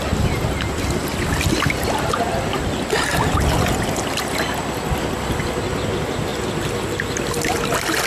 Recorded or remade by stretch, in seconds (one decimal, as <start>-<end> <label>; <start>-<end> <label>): 0.0-8.1 recorded